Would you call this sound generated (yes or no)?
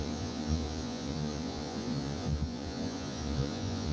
yes